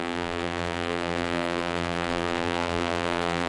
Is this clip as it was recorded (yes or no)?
no